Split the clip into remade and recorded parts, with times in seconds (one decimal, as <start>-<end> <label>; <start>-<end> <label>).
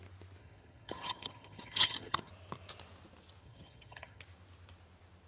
0.0-0.4 recorded; 0.4-2.3 remade; 2.3-3.4 recorded; 3.4-4.2 remade; 4.2-5.3 recorded